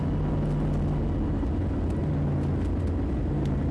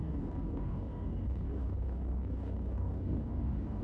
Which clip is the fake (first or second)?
second